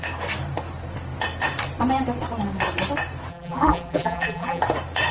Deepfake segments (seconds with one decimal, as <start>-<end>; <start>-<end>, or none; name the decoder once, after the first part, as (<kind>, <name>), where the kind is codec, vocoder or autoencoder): 3.3-4.6 (vocoder, BigVGAN v2)